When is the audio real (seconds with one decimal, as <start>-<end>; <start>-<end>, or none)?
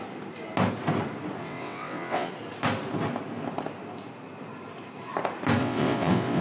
0.0-1.4; 2.3-5.6